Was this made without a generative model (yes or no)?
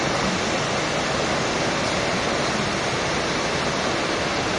yes